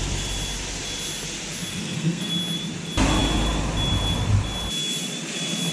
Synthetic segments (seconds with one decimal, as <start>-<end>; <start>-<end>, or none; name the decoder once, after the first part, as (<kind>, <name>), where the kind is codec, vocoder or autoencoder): 1.7-2.3 (codec, SNAC)